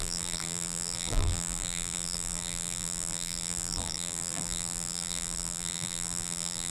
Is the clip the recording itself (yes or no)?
no